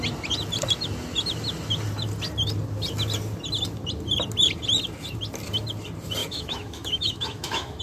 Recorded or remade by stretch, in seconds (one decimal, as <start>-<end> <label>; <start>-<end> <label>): 0.0-6.2 recorded; 6.2-7.8 remade

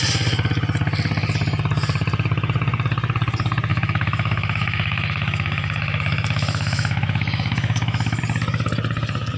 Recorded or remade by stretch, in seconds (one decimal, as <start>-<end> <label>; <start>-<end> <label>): 0.0-3.7 recorded; 3.7-8.2 remade; 8.2-9.4 recorded

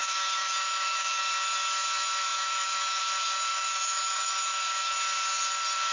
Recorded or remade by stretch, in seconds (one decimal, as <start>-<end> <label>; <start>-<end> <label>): 0.0-1.2 remade; 1.2-2.3 recorded; 2.3-3.0 remade; 3.0-3.5 recorded; 3.5-4.9 remade; 4.9-5.9 recorded

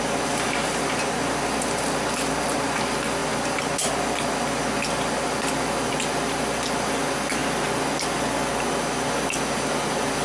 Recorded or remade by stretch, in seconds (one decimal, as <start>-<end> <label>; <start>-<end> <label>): 0.0-10.2 recorded